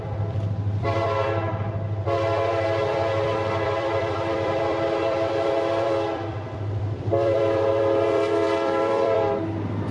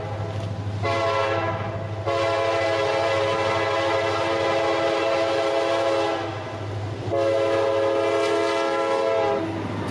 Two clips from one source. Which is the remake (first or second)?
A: first